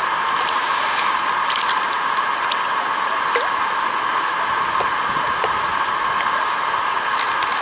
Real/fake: real